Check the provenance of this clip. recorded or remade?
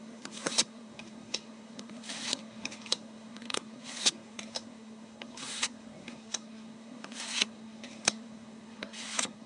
remade